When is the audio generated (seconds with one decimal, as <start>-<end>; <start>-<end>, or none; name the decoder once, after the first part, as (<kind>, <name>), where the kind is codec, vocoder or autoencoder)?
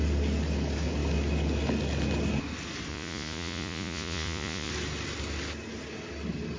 2.9-4.7 (vocoder, Vocos)